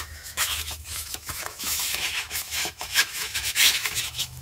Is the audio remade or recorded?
remade